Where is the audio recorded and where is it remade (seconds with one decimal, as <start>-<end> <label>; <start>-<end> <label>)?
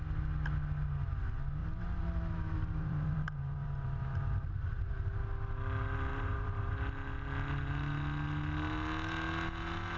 0.0-1.6 recorded; 1.6-5.0 remade; 5.0-6.1 recorded; 6.1-6.7 remade; 6.7-10.0 recorded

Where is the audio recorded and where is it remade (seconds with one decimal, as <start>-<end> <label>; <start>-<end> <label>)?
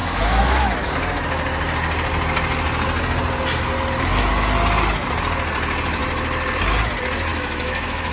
0.0-0.9 remade; 0.9-7.3 recorded; 7.3-8.1 remade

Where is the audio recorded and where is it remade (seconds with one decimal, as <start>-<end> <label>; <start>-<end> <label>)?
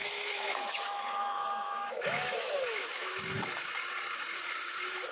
0.0-3.1 remade; 3.1-5.1 recorded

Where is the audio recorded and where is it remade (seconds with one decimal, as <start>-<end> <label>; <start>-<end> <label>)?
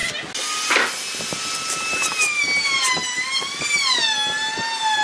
0.0-5.0 recorded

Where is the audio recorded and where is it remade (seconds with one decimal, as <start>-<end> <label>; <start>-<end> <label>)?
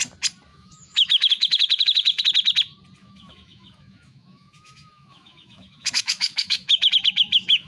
0.0-0.5 recorded; 0.5-2.2 remade; 2.2-3.0 recorded; 3.0-7.7 remade